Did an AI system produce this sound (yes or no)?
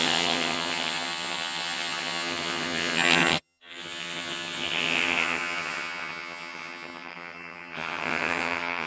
yes